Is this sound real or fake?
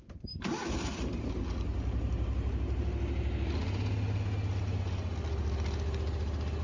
real